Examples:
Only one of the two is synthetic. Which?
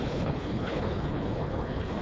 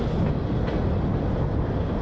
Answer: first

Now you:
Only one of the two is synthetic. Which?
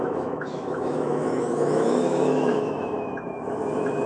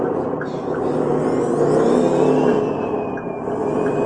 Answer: first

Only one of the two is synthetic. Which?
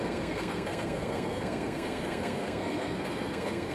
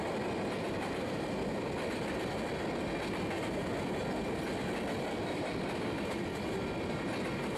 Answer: first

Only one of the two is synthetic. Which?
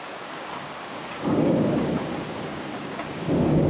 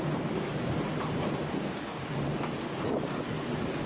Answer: first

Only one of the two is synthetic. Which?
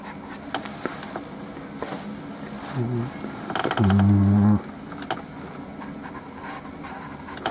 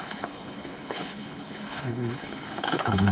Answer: second